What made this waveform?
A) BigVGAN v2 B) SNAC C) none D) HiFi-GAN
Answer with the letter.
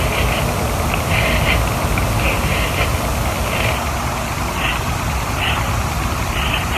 C